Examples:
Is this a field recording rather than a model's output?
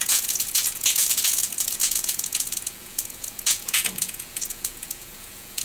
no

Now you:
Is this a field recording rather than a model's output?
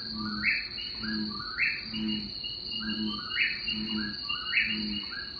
yes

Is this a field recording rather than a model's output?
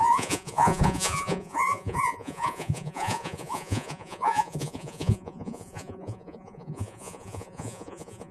no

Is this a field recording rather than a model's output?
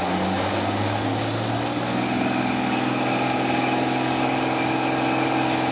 no